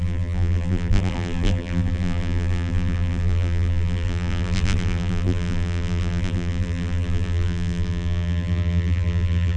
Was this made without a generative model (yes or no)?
no